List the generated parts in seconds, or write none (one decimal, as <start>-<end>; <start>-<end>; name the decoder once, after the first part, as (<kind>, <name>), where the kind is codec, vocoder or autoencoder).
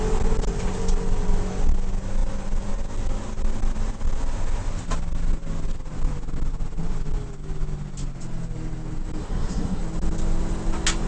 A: 9.2-9.8 (codec, SNAC)